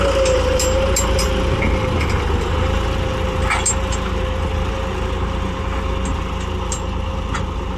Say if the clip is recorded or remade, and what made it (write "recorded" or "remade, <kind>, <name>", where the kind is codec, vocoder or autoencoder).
recorded